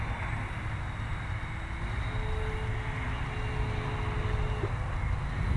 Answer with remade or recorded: recorded